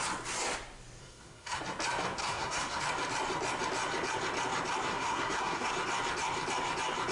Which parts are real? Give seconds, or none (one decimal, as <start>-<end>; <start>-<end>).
0.0-1.0; 1.6-2.2; 2.8-4.9; 5.7-7.1